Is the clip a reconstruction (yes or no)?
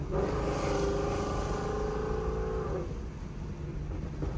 no